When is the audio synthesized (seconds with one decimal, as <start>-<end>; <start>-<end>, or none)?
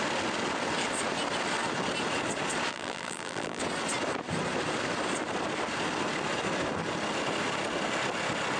2.7-3.6